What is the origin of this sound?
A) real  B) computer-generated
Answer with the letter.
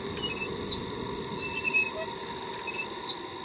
A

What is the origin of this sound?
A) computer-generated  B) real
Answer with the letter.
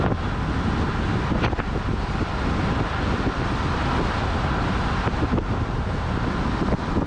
B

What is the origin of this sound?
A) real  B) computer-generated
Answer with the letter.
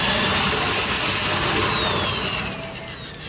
A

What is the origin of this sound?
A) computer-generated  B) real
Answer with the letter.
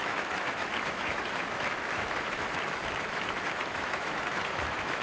A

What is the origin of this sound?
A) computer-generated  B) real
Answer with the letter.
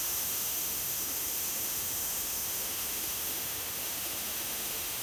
A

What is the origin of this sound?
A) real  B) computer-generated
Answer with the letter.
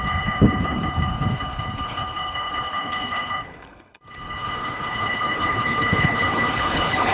B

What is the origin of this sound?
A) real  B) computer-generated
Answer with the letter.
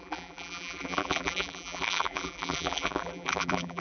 B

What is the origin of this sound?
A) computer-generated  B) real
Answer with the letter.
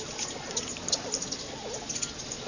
B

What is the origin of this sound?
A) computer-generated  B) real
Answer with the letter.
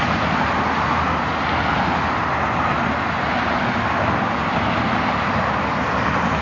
B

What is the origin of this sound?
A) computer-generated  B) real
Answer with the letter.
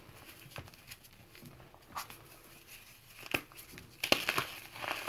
B